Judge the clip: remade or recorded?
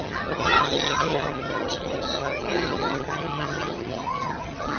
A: remade